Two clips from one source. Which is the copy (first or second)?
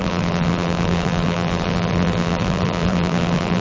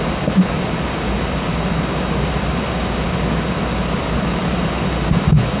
first